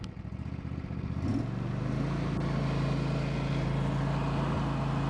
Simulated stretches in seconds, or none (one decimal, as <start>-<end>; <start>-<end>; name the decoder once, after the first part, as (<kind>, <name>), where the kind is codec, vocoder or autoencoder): none